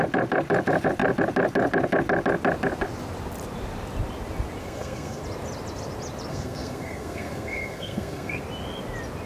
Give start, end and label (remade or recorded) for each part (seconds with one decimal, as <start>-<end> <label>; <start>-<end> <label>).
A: 0.0-4.6 recorded; 4.6-5.2 remade; 5.2-6.3 recorded; 6.3-8.4 remade; 8.4-9.3 recorded